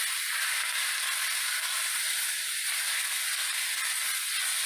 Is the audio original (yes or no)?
yes